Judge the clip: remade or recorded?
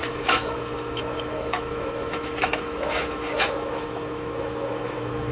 remade